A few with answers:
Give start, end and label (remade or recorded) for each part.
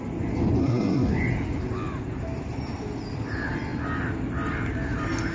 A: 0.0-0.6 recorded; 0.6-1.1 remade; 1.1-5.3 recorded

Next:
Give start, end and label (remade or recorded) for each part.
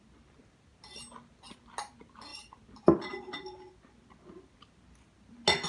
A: 0.0-5.7 recorded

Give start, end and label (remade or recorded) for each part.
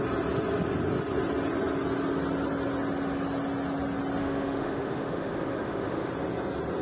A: 0.0-4.2 recorded; 4.2-6.1 remade; 6.1-6.8 recorded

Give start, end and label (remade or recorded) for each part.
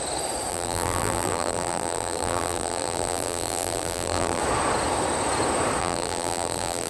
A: 0.0-0.5 recorded; 0.5-4.4 remade; 4.4-5.8 recorded; 5.8-6.9 remade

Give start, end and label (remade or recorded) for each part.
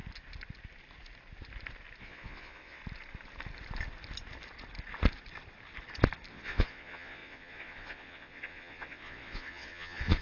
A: 0.0-2.0 recorded; 2.0-2.8 remade; 2.8-6.3 recorded; 6.3-10.2 remade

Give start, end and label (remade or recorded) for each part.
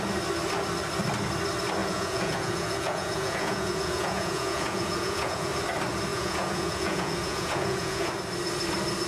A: 0.0-1.8 recorded; 1.8-5.5 remade; 5.5-6.1 recorded; 6.1-8.1 remade; 8.1-9.1 recorded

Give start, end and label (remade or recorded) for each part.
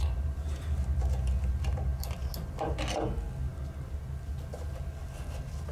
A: 0.0-5.7 recorded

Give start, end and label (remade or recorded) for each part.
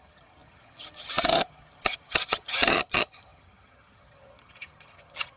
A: 0.0-5.4 remade